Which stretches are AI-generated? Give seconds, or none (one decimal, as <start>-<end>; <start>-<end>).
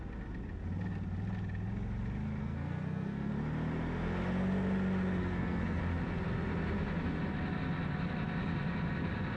2.4-3.3; 5.2-5.8